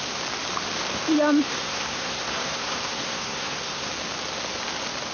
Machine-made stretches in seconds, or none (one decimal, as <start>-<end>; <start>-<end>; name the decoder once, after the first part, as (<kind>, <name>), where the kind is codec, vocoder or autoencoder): 1.5-3.9 (codec, SNAC)